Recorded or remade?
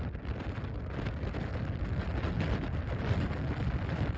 recorded